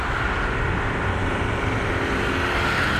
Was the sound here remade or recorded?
recorded